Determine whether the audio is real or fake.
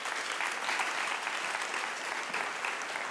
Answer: real